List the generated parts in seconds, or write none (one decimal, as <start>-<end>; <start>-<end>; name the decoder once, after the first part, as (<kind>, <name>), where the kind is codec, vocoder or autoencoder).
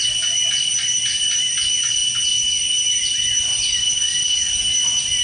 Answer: 3.7-4.5 (autoencoder, DAC-VAE)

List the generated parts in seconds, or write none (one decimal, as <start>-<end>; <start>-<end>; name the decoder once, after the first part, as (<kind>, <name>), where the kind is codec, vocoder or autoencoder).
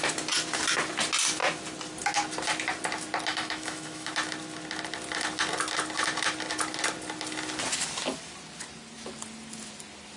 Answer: 3.3-4.1 (autoencoder, DAC-VAE)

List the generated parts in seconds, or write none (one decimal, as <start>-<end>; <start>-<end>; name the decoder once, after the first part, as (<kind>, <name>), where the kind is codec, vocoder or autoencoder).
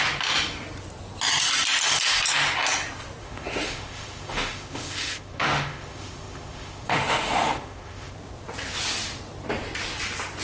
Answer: 3.2-8.1 (autoencoder, DAC-VAE)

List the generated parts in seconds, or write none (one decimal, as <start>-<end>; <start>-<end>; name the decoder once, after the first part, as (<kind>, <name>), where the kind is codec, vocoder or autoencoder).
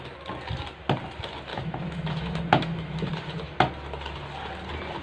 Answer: 1.5-3.1 (autoencoder, DAC-VAE)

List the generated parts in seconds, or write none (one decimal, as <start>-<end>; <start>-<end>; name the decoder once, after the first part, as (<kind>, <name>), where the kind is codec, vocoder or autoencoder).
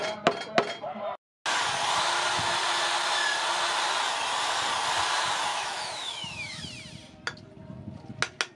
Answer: 5.5-6.6 (autoencoder, DAC-VAE)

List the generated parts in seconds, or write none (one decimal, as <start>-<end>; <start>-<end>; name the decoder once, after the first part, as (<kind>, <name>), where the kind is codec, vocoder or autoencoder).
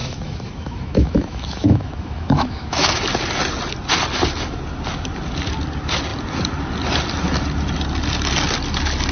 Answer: 0.0-3.0 (autoencoder, DAC-VAE)